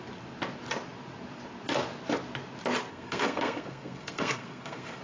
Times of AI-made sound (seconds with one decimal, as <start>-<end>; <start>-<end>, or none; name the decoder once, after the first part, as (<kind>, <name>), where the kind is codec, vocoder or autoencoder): 2.9-5.0 (codec, SNAC)